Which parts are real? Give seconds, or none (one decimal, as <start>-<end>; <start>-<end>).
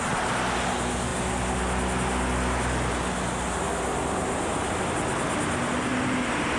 0.0-6.6